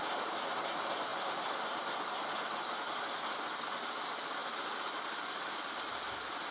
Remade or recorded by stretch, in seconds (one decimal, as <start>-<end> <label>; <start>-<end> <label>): 0.0-6.5 recorded